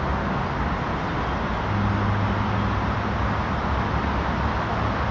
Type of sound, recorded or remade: recorded